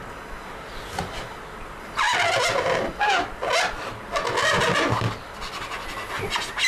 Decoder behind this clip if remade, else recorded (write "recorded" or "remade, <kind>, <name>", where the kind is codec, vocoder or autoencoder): recorded